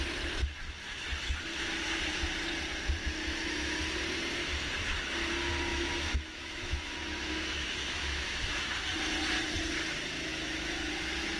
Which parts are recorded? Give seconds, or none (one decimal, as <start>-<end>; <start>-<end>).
0.0-3.0; 3.8-5.7; 8.7-10.3; 10.9-11.4

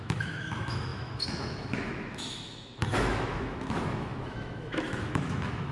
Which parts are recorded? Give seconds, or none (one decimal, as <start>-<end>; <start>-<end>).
none

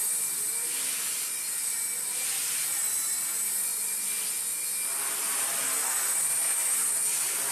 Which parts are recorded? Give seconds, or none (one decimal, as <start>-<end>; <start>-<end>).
0.0-7.5

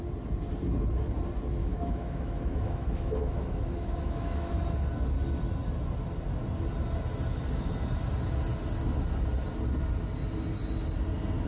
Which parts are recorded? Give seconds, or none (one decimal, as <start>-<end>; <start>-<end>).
0.0-1.6; 4.5-11.5

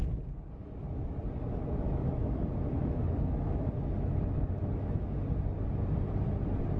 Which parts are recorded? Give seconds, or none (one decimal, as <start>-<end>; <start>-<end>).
0.0-0.6; 1.2-1.6; 5.2-6.8